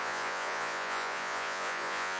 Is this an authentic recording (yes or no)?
no